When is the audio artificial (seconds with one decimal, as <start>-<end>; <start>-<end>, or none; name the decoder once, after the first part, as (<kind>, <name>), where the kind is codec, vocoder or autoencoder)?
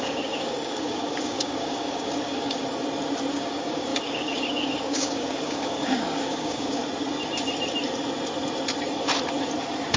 0.0-2.6 (codec, DAC); 3.3-6.8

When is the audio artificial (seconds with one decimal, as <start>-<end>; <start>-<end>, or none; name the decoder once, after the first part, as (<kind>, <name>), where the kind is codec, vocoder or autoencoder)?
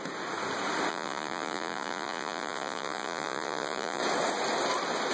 0.9-4.0 (vocoder, Vocos)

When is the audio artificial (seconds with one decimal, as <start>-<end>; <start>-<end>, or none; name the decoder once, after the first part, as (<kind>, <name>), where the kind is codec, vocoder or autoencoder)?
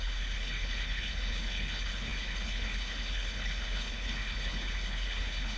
0.0-5.6 (codec, HILCodec)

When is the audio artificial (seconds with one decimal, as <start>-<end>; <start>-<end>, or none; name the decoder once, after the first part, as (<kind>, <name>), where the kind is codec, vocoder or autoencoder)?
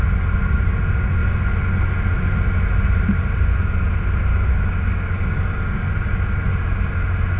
4.3-5.9 (codec, DAC)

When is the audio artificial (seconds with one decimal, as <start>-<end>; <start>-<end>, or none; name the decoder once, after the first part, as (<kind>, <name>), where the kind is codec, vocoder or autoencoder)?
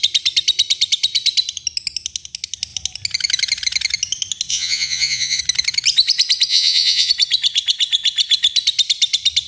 4.5-5.4 (vocoder, Vocos); 6.5-7.1